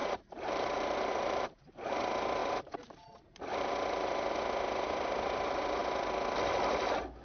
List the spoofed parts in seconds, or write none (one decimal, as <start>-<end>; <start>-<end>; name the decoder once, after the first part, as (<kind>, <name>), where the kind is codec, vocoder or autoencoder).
0.0-2.0 (vocoder, BigVGAN v2)